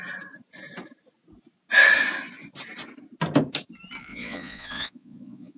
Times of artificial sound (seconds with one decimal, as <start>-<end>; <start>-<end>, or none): 4.1-5.6